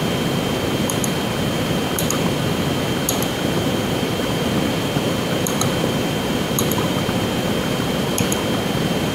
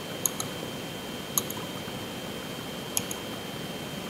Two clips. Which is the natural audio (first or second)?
second